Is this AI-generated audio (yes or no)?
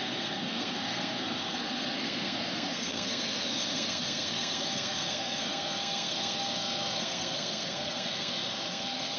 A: yes